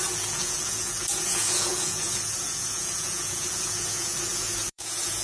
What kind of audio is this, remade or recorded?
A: remade